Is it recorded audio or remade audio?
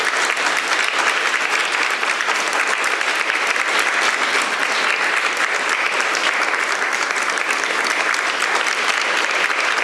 recorded